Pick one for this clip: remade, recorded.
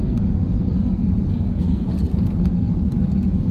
remade